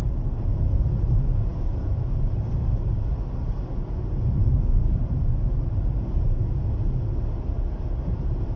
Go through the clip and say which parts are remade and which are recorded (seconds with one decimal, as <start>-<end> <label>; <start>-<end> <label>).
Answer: 0.0-4.8 recorded; 4.8-5.3 remade; 5.3-8.6 recorded